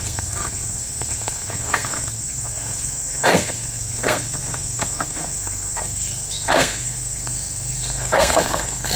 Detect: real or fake fake